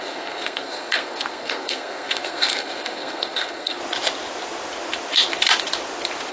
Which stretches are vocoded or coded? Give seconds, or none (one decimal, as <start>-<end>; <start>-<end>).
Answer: 0.0-3.8

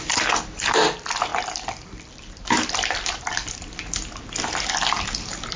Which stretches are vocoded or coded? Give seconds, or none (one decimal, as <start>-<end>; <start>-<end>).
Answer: 1.3-3.5

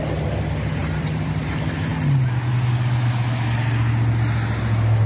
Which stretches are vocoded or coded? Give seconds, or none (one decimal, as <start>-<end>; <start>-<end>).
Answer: 0.8-1.5

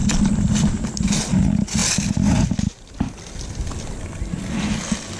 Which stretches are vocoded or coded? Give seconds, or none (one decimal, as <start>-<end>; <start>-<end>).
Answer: none

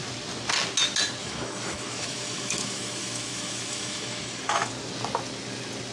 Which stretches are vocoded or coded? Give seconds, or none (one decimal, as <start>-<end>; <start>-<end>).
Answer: 1.2-4.7

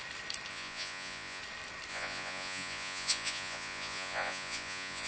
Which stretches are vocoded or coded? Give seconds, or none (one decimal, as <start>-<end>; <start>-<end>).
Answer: 0.5-1.4; 1.9-5.1